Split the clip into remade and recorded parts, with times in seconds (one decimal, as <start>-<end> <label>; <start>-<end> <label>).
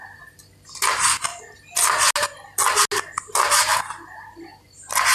0.0-5.1 recorded